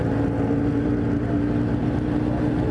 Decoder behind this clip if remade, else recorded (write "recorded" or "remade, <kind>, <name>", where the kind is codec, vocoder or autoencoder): recorded